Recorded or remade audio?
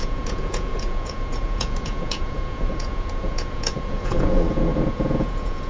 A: remade